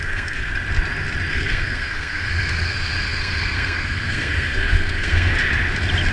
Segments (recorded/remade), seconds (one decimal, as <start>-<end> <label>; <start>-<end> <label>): 0.0-0.5 remade; 0.5-1.3 recorded; 1.3-5.3 remade; 5.3-6.1 recorded